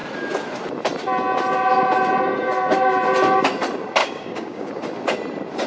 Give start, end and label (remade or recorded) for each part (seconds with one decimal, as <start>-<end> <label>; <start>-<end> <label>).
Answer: 0.0-4.0 recorded; 4.0-4.7 remade; 4.7-5.7 recorded